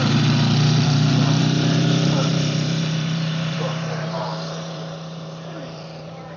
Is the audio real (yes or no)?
no